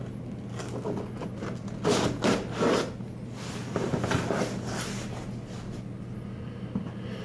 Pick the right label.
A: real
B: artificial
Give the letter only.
A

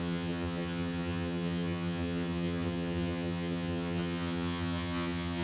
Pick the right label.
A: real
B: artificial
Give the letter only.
B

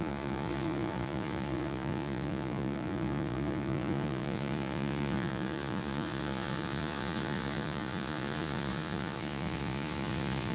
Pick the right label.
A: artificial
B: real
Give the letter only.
A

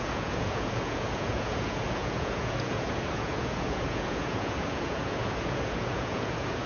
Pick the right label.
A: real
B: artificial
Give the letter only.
B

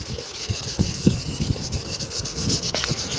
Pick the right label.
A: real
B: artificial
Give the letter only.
B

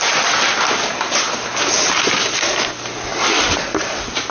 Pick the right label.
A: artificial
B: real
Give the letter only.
B